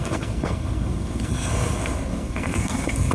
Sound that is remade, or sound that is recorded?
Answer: remade